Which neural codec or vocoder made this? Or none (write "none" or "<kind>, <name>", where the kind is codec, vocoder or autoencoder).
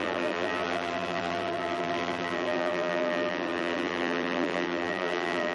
vocoder, BigVGAN v2